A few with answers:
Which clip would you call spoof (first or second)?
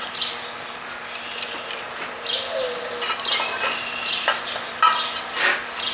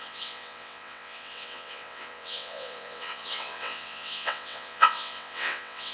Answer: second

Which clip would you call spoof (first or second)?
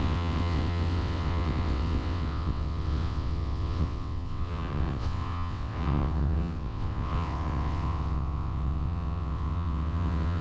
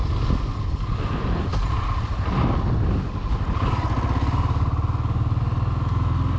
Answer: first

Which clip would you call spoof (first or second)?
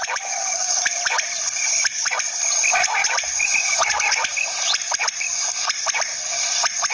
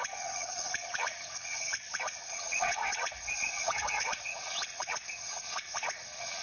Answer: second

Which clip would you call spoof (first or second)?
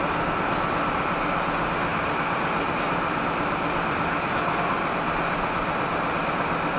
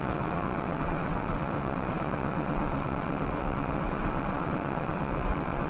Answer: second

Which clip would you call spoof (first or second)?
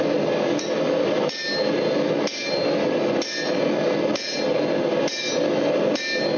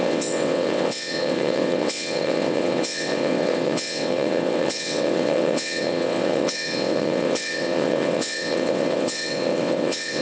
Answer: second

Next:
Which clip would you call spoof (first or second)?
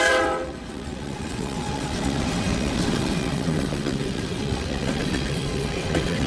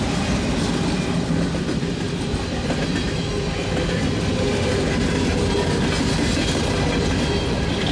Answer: first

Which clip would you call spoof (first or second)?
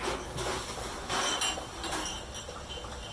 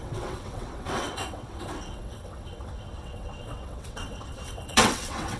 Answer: second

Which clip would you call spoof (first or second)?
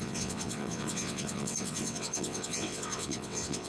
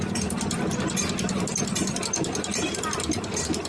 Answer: first